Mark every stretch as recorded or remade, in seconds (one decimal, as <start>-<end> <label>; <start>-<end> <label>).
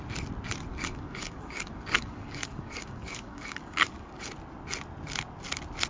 0.0-0.7 recorded; 0.7-4.2 remade; 4.2-5.9 recorded